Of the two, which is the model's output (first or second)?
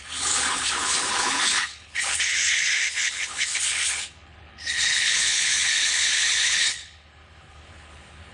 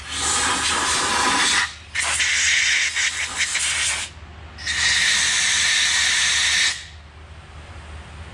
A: first